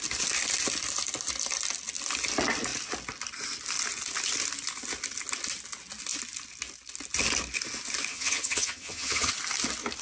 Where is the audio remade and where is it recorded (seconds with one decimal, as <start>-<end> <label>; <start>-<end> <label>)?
0.0-8.1 recorded; 8.1-9.3 remade; 9.3-10.0 recorded